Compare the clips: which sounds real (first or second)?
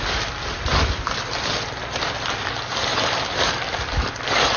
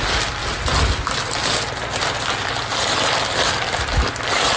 second